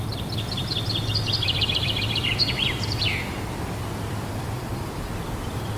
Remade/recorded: remade